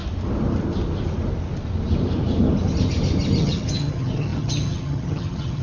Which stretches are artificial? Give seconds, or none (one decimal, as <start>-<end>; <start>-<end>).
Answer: 3.4-5.6